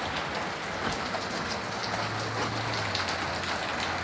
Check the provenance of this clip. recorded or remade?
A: recorded